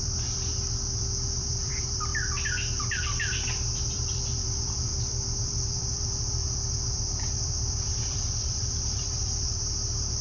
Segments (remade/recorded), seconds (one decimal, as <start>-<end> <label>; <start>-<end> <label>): 0.0-0.5 remade; 0.5-1.4 recorded; 1.4-2.1 remade; 2.1-3.0 recorded; 3.0-4.9 remade; 4.9-5.4 recorded; 5.4-10.2 remade